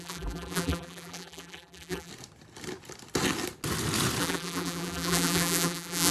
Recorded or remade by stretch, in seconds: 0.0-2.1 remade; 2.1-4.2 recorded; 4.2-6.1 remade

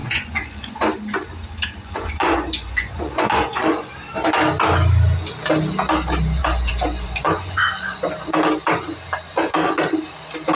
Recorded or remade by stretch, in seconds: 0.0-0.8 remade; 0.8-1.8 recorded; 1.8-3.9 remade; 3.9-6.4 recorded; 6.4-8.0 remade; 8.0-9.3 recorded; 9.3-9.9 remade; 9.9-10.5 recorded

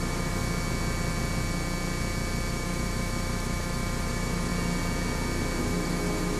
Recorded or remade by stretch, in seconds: 0.0-0.4 remade; 0.4-2.5 recorded; 2.5-4.5 remade; 4.5-5.6 recorded; 5.6-6.4 remade